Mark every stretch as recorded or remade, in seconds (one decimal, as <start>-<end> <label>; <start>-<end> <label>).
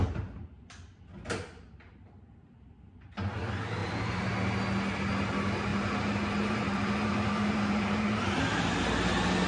0.0-3.8 recorded; 3.8-4.3 remade; 4.3-5.7 recorded; 5.7-8.2 remade; 8.2-9.5 recorded